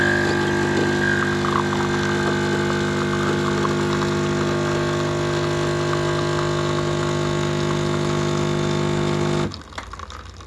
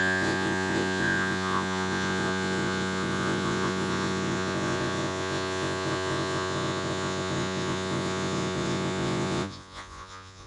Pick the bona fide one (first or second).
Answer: first